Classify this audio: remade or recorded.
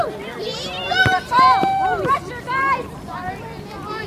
remade